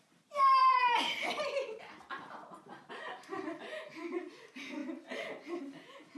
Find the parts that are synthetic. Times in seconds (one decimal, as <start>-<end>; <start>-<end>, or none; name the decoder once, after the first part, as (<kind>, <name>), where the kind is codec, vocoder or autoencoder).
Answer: 0.6-4.3 (vocoder, BigVGAN v2)